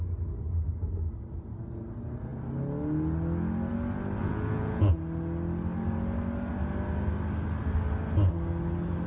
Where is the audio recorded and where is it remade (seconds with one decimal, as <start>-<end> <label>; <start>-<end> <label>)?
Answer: 0.0-4.2 recorded; 4.2-4.9 remade; 4.9-9.1 recorded